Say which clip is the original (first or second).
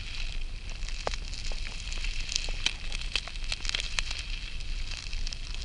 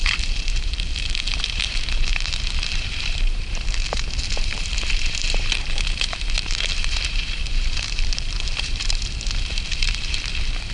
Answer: first